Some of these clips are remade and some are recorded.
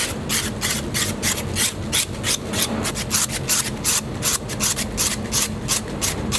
recorded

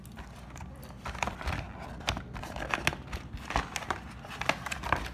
recorded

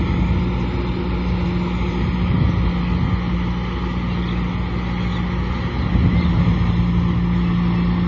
recorded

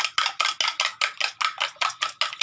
recorded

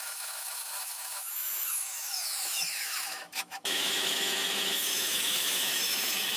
remade